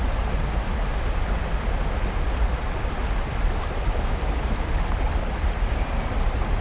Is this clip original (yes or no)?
yes